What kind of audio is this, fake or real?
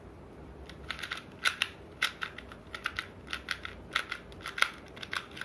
real